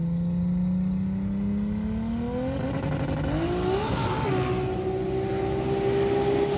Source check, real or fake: real